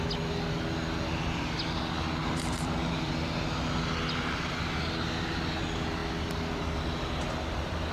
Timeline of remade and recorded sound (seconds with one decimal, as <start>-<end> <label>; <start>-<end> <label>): 0.0-2.2 recorded; 2.2-3.0 remade; 3.0-7.9 recorded